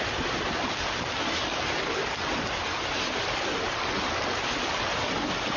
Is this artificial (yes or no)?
no